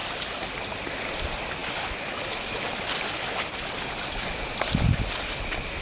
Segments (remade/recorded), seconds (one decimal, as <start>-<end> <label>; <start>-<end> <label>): 0.0-5.8 recorded